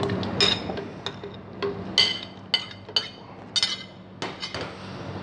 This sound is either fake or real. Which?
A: real